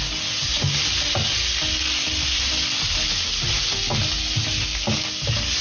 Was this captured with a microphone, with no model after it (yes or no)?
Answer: yes